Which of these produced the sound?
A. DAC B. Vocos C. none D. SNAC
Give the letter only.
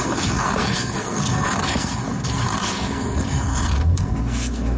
D